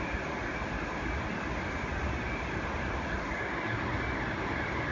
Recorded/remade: recorded